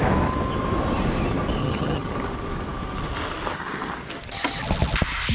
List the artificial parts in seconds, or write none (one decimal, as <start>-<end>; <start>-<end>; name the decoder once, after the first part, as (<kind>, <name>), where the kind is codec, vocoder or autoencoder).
1.6-2.1 (vocoder, HiFi-GAN)